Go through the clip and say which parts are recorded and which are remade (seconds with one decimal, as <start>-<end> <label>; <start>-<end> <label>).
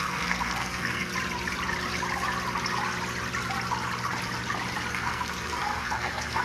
0.0-1.1 remade; 1.1-4.9 recorded; 4.9-6.4 remade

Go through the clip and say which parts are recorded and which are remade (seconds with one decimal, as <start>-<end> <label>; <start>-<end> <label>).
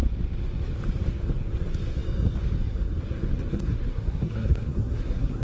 0.0-3.5 recorded; 3.5-5.4 remade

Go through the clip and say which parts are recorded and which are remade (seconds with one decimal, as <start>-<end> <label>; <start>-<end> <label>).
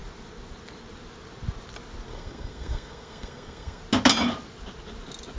0.0-2.1 recorded; 2.1-3.8 remade; 3.8-5.4 recorded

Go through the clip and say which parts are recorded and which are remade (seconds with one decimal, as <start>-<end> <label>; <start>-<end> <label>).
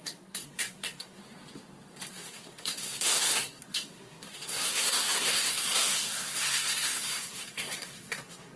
0.0-1.2 remade; 1.2-2.1 recorded; 2.1-8.6 remade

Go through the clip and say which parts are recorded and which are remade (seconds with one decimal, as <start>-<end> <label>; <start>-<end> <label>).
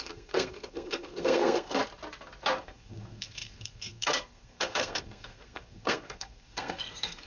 0.0-1.8 remade; 1.8-2.6 recorded; 2.6-7.3 remade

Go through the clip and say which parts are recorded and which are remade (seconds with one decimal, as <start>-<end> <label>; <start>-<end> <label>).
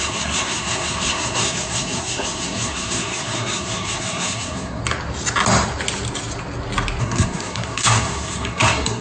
0.0-4.8 remade; 4.8-7.0 recorded; 7.0-9.0 remade